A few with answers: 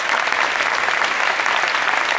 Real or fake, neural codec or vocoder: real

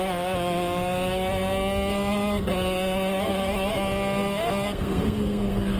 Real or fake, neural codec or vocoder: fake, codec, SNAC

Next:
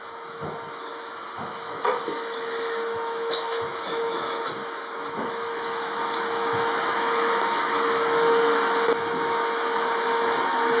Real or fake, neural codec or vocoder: fake, autoencoder, DAC-VAE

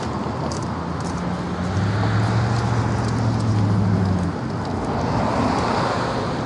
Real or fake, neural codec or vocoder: real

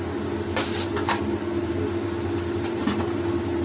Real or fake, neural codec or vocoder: real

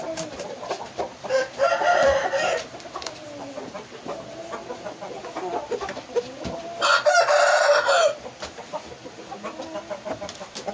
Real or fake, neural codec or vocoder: fake, vocoder, BigVGAN v2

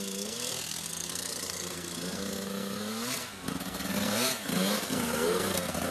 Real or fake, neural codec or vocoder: fake, codec, SNAC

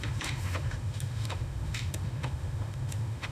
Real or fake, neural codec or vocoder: fake, autoencoder, DAC-VAE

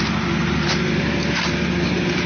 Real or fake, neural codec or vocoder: real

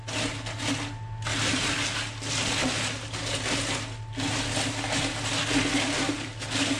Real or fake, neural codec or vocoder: real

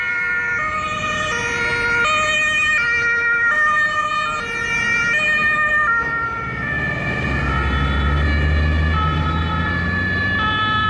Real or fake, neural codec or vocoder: real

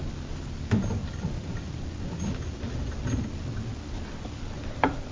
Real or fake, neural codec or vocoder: real